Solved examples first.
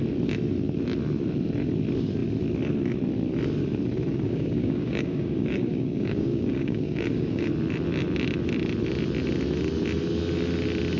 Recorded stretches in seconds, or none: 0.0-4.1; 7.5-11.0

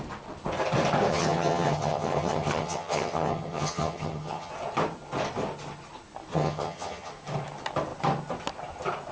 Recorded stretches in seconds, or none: 0.0-1.1; 4.5-6.3; 7.1-9.1

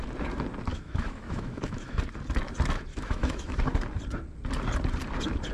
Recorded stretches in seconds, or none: 0.0-0.7; 2.0-2.9; 3.6-5.5

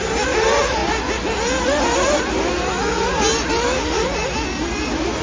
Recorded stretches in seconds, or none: 0.0-5.2

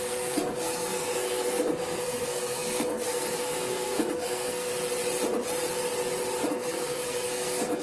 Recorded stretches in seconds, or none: 4.7-6.5

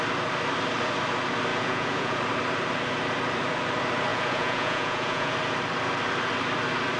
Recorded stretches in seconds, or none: 0.0-1.5; 2.2-4.1; 5.3-7.0

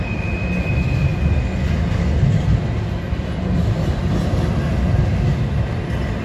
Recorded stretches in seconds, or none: 0.0-6.2

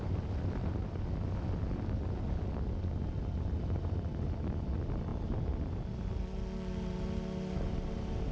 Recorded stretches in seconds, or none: 0.0-8.3